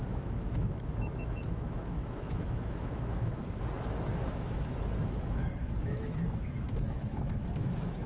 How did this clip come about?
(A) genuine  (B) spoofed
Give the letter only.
B